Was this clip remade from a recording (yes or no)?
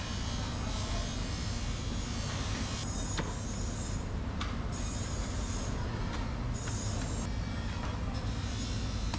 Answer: no